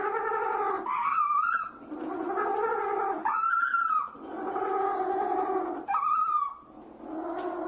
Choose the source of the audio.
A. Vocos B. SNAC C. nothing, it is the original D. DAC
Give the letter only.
C